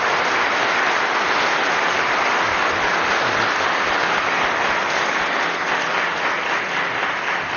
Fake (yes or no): no